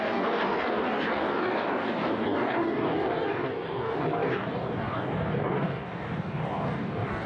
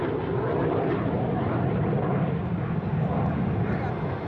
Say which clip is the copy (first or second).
first